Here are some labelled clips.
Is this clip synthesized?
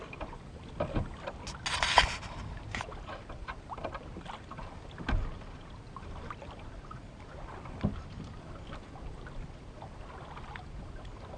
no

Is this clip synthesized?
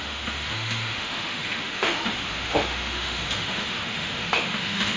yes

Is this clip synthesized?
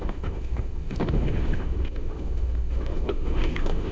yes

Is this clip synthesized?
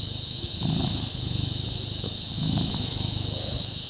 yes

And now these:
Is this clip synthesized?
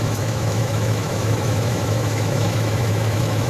yes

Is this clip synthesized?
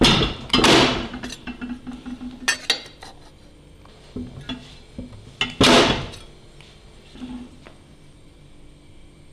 no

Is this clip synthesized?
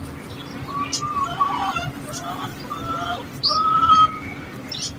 no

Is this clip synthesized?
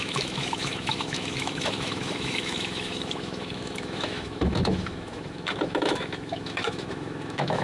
yes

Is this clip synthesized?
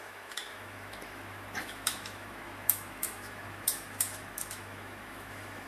yes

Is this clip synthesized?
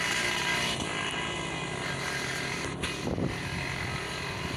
no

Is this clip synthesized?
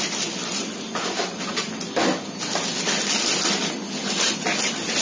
no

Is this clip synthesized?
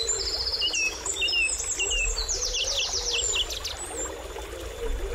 no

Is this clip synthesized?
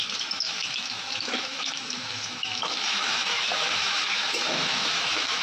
yes